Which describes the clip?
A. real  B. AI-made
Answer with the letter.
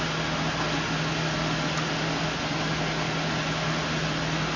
A